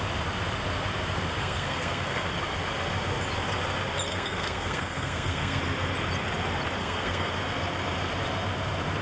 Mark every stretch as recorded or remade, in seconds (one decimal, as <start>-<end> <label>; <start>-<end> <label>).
0.0-1.4 recorded; 1.4-2.3 remade; 2.3-4.1 recorded; 4.1-5.6 remade; 5.6-6.8 recorded; 6.8-7.3 remade; 7.3-9.0 recorded